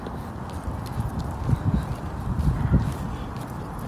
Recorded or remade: recorded